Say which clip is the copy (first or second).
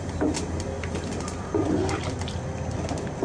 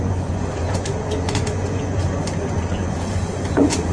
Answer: second